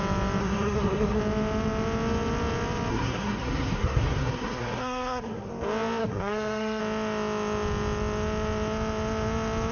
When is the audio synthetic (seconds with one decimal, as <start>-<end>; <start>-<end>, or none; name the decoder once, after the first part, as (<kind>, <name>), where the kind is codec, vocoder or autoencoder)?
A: 0.4-1.2 (codec, SNAC); 2.9-5.5; 6.0-6.8